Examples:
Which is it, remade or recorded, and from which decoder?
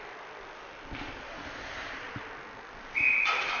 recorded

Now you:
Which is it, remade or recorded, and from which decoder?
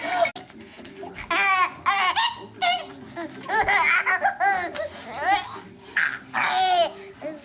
recorded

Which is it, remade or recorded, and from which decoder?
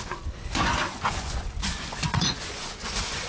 remade, vocoder, Vocos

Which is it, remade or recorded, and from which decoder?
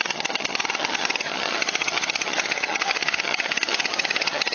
remade, vocoder, HiFi-GAN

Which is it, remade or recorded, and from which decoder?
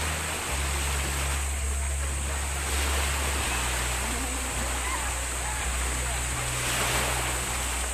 recorded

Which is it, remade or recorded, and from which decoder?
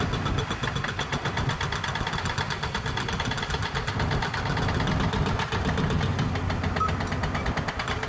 recorded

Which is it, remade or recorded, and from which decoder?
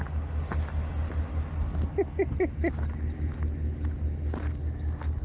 recorded